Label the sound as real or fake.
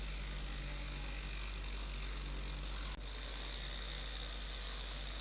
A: real